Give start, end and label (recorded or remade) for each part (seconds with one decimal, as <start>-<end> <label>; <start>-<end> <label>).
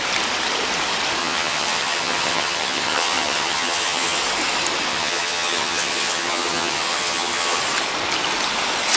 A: 0.0-1.2 recorded; 1.2-4.2 remade; 4.2-4.9 recorded; 4.9-7.6 remade; 7.6-9.0 recorded